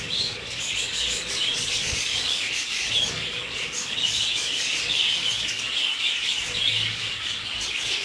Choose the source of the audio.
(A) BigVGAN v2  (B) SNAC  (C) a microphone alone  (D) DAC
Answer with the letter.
D